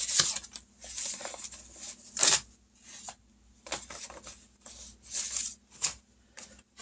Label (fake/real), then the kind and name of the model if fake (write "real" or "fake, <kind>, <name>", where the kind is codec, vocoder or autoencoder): real